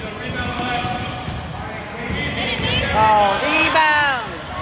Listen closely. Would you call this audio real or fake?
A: real